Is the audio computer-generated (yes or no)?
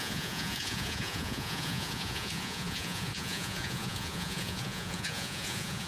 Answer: yes